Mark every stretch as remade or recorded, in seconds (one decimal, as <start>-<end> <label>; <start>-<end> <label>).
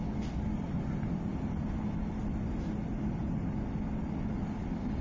0.0-5.0 recorded